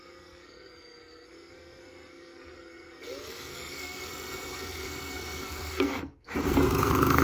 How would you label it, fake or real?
fake